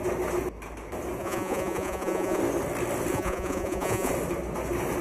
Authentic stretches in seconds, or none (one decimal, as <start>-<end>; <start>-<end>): 0.0-1.2; 2.4-3.1; 4.1-5.0